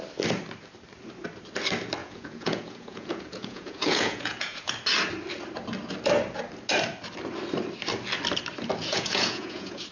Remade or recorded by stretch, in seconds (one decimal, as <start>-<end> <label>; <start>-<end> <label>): 0.0-2.0 recorded; 2.0-4.7 remade; 4.7-8.8 recorded; 8.8-9.9 remade